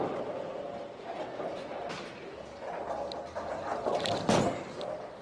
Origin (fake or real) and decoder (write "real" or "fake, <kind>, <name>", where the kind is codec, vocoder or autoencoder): real